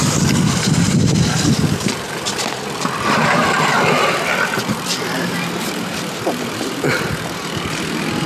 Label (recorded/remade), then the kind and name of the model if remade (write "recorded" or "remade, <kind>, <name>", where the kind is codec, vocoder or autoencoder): remade, vocoder, BigVGAN v2